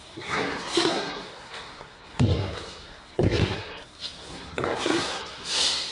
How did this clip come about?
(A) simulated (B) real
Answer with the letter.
A